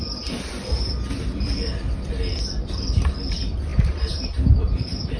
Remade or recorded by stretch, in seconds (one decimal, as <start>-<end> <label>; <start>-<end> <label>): 0.0-3.7 remade; 3.7-4.5 recorded; 4.5-5.2 remade